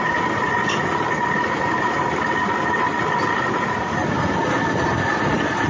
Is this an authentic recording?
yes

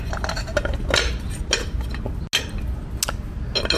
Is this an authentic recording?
yes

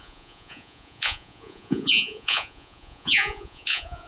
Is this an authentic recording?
no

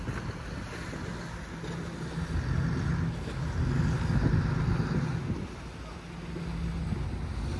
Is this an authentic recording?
yes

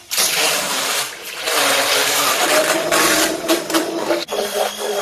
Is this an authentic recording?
no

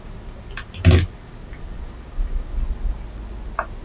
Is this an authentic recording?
yes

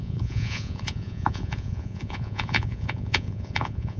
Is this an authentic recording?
no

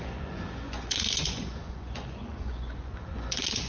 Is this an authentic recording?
no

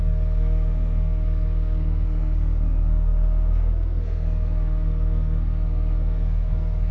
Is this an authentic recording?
no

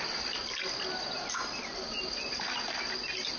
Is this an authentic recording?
yes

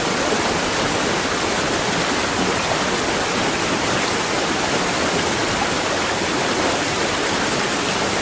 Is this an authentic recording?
yes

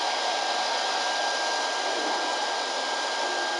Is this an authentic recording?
yes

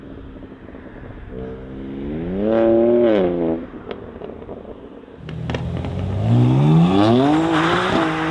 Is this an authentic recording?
yes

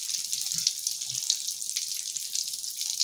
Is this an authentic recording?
yes